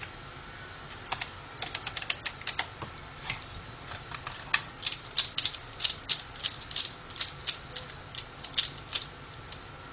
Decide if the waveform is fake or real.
real